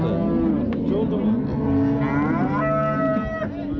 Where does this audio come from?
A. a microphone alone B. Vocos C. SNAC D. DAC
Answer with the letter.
A